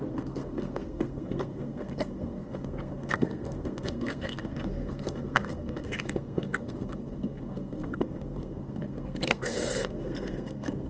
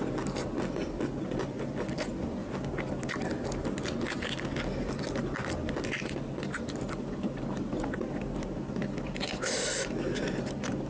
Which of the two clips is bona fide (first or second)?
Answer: second